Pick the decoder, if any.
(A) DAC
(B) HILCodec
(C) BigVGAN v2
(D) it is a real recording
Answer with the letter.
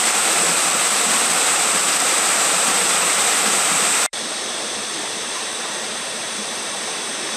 C